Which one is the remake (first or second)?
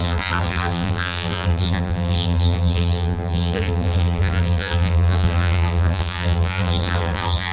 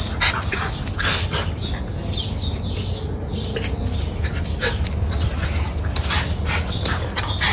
first